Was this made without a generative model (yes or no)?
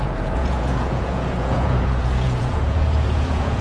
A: no